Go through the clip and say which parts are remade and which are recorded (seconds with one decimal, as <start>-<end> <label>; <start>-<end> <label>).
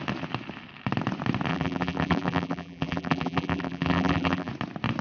0.0-1.5 recorded; 1.5-4.5 remade; 4.5-5.0 recorded